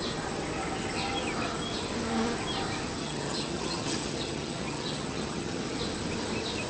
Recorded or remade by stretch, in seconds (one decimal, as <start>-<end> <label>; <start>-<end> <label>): 0.0-3.0 recorded; 3.0-5.8 remade; 5.8-6.7 recorded